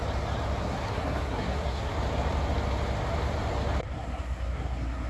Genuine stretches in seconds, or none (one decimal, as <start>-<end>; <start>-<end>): 0.0-0.6; 1.9-3.8